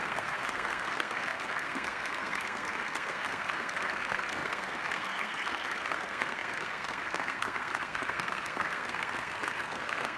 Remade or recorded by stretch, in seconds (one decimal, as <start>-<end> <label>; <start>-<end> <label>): 0.0-10.2 remade